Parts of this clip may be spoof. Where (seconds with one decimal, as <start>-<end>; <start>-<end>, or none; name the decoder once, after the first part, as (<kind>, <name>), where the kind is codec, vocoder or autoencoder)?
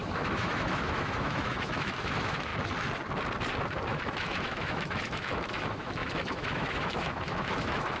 0.0-2.5 (autoencoder, DAC-VAE); 3.9-8.0